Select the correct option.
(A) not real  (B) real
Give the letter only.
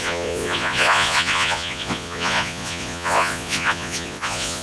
A